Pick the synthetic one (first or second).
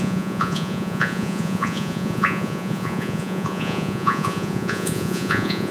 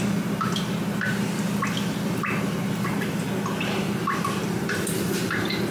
first